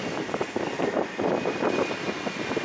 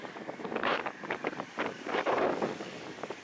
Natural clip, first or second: first